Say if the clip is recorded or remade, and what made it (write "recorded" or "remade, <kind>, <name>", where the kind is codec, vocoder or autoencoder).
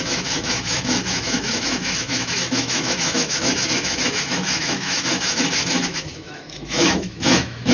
remade, autoencoder, DAC-VAE